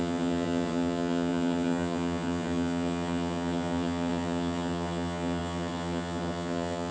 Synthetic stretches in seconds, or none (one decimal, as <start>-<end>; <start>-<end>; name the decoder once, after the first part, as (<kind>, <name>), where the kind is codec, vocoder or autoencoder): 0.0-6.9 (vocoder, HiFi-GAN)